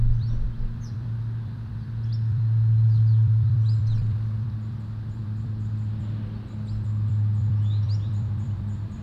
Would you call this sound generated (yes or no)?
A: yes